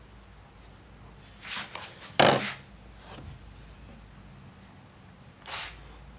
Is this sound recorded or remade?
recorded